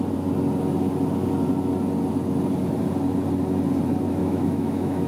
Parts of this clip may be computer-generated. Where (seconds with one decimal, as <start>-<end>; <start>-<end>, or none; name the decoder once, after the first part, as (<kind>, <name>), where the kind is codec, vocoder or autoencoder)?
4.2-5.1 (autoencoder, DAC-VAE)